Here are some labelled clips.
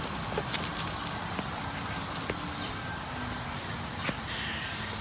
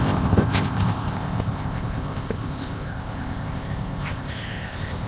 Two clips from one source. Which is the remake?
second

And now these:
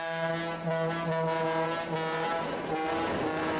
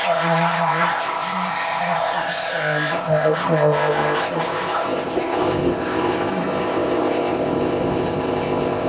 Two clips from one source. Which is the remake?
second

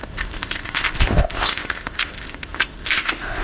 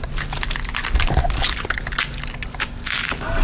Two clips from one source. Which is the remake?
first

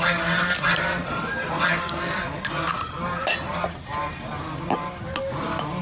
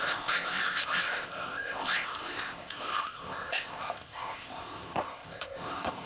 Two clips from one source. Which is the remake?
second